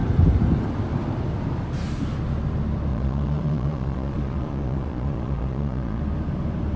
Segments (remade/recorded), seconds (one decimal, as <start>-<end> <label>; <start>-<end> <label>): 0.0-2.9 recorded; 2.9-6.0 remade; 6.0-6.8 recorded